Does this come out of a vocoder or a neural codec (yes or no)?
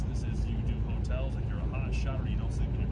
no